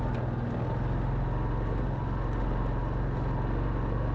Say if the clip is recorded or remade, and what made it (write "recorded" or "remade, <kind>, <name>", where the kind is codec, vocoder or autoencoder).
recorded